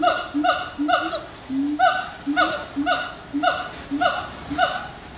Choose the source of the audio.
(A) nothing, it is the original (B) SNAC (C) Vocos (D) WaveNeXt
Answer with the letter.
A